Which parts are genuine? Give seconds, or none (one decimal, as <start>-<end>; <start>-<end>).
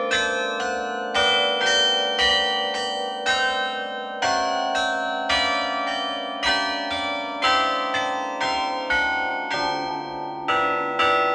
0.0-11.3